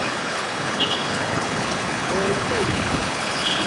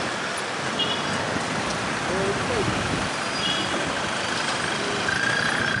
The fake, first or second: first